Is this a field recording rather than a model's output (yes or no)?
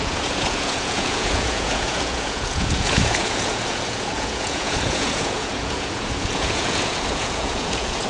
no